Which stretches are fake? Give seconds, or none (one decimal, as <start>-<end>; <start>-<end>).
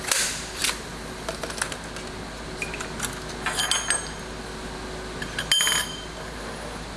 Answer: none